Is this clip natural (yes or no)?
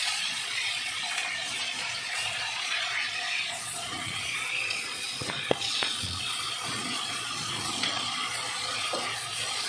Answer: no